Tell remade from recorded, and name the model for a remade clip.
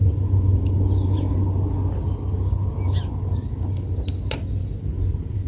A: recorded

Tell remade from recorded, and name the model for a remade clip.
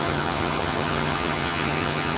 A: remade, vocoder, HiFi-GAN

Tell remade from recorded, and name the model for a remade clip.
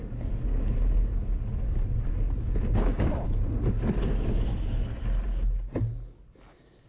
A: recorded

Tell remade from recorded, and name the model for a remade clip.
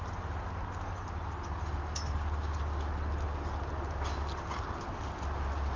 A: recorded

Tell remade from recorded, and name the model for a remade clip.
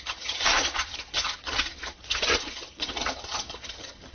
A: remade, vocoder, HiFi-GAN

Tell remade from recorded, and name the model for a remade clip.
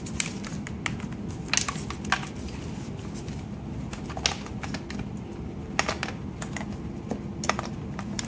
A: recorded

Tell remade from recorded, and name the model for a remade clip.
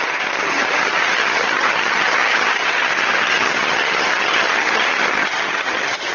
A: remade, vocoder, HiFi-GAN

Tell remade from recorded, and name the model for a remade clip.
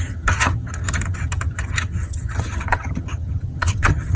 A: remade, vocoder, HiFi-GAN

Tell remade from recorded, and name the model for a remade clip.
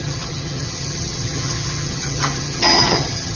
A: remade, vocoder, HiFi-GAN